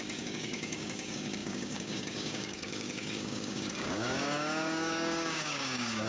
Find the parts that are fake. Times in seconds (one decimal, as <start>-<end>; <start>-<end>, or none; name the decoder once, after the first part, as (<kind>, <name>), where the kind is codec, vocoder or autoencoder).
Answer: 0.0-6.1 (codec, DAC)